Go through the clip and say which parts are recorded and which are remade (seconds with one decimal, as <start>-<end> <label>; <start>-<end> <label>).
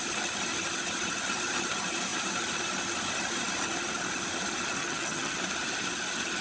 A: 0.0-4.8 recorded; 4.8-5.4 remade; 5.4-6.4 recorded